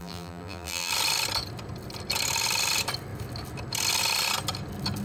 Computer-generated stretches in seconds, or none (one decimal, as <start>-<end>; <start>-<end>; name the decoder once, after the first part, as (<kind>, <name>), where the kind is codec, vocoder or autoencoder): 0.0-0.9 (vocoder, BigVGAN v2)